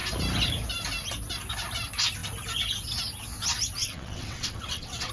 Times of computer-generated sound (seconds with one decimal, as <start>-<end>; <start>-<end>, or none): 3.8-5.1